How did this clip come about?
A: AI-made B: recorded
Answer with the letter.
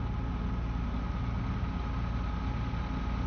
B